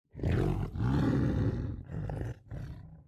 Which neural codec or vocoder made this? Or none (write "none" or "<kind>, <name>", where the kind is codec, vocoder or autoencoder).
none